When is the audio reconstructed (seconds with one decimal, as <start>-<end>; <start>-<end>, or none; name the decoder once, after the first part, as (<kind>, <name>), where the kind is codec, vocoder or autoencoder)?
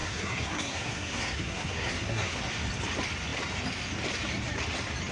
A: 0.0-2.4 (codec, SNAC)